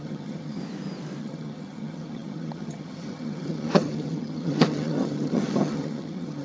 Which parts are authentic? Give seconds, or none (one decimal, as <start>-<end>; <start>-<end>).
0.6-1.2